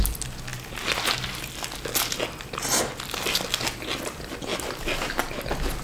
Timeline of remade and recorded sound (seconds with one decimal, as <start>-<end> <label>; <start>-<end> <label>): 0.0-5.8 recorded